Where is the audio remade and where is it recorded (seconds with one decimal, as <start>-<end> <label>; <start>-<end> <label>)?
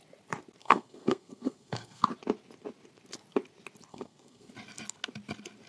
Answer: 0.0-0.6 recorded; 0.6-2.0 remade; 2.0-3.9 recorded; 3.9-4.5 remade; 4.5-5.7 recorded